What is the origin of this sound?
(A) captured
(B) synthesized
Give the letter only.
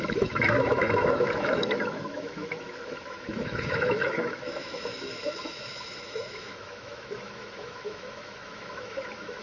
B